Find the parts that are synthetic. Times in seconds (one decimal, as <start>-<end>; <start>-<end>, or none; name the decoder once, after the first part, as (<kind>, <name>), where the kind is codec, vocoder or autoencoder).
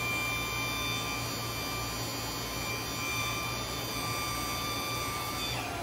3.1-5.8 (vocoder, BigVGAN v2)